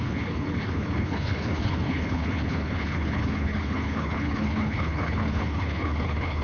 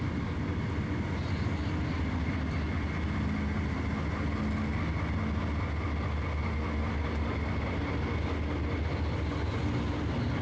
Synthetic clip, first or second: first